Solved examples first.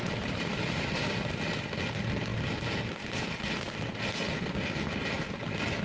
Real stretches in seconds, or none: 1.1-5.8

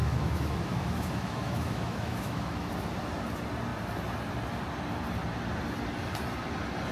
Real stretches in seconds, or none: 2.7-6.9

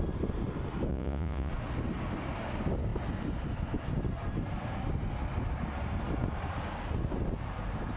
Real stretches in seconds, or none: 0.0-0.9; 1.5-8.0

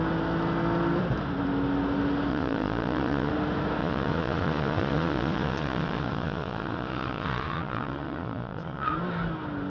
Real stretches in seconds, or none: 0.0-2.3; 3.3-3.8; 8.9-9.7